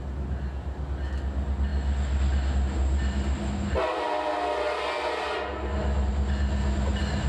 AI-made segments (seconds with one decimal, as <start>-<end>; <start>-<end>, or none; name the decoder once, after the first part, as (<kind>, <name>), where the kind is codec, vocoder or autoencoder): none